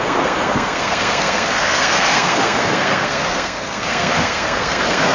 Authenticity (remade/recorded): remade